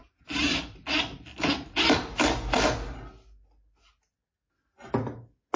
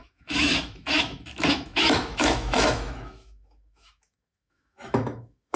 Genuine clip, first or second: first